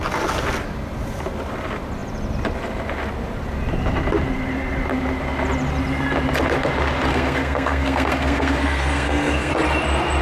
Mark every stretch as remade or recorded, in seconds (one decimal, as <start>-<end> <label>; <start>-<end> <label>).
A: 0.0-7.1 recorded; 7.1-9.5 remade; 9.5-10.2 recorded